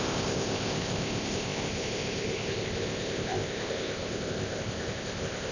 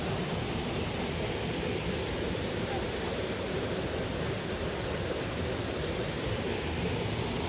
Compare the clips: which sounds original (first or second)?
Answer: second